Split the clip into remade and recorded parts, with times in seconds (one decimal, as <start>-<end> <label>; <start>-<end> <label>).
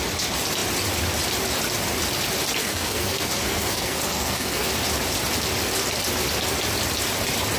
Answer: 0.0-2.6 recorded; 2.6-4.7 remade; 4.7-7.6 recorded